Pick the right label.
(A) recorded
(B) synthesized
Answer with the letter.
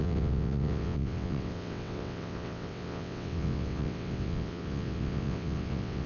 B